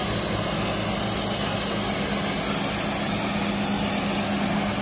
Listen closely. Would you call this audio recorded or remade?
recorded